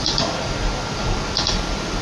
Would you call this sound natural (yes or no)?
yes